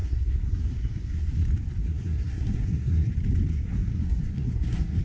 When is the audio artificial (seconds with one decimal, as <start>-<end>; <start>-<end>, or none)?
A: 0.0-1.3; 1.8-3.1; 3.5-5.0